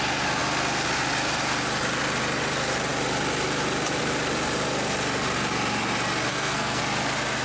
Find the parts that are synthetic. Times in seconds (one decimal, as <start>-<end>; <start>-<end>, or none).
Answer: 6.3-6.8